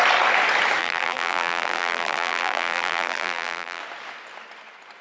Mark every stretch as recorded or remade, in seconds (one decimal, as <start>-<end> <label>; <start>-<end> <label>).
0.0-0.8 recorded; 0.8-3.8 remade; 3.8-5.0 recorded